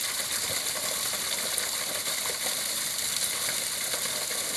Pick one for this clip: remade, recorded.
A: recorded